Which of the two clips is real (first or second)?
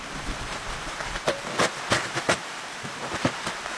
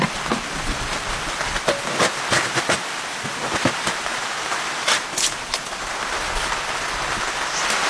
second